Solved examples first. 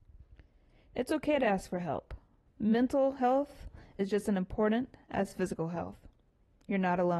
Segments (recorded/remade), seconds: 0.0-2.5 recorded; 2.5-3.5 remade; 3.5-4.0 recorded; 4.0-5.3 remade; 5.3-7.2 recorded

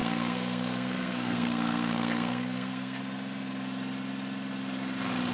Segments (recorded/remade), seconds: 0.0-3.0 remade; 3.0-5.3 recorded